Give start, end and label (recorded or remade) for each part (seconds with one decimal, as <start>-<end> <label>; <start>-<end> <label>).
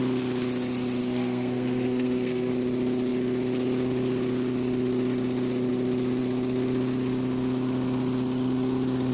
0.0-1.0 recorded; 1.0-2.5 remade; 2.5-9.1 recorded